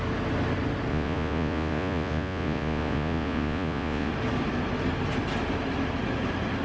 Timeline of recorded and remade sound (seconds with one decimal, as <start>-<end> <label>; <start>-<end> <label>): 0.0-0.9 recorded; 0.9-4.1 remade; 4.1-6.6 recorded